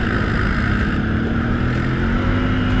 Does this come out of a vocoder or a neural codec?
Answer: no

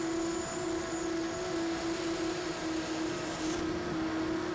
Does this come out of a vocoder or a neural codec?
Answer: no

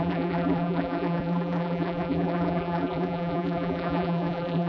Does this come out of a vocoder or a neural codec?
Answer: yes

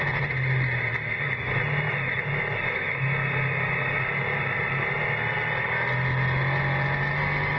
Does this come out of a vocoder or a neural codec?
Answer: no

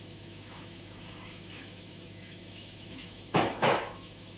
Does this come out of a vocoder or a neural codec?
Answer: yes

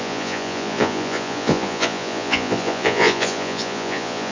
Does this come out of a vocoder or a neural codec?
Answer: yes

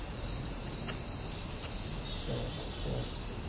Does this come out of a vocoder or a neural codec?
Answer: no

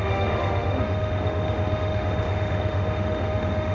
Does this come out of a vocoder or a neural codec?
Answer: yes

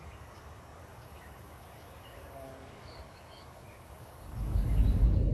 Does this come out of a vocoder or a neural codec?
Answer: yes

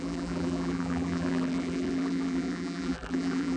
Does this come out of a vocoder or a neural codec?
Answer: yes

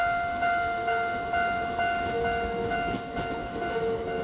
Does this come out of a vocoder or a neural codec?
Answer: yes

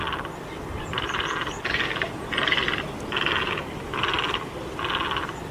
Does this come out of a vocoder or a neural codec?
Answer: no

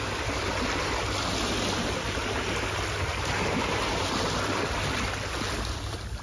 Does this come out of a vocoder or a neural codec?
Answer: no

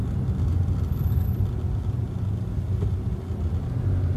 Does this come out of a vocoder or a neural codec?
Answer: no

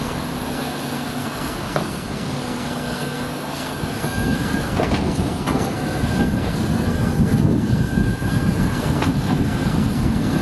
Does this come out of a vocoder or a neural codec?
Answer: yes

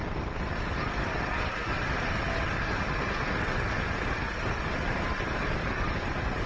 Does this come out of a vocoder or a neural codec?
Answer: no